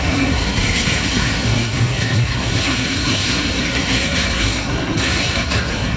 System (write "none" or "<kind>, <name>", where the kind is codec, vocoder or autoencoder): codec, SNAC